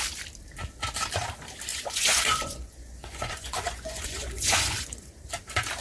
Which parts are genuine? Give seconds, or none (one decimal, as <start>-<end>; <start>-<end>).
0.0-1.7; 5.2-5.8